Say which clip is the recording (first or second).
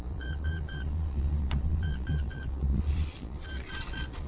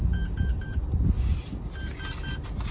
second